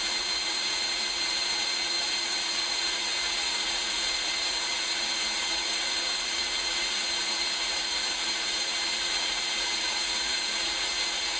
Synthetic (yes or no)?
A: yes